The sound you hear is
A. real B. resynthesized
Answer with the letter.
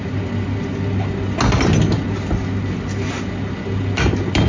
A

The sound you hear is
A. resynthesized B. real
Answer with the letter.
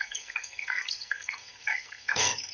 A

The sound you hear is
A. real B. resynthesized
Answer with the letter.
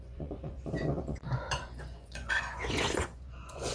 B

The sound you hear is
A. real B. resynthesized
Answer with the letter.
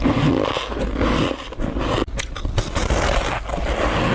A